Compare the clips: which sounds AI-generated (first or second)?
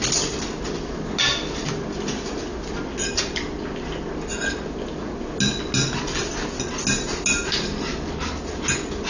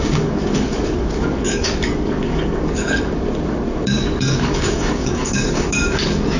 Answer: second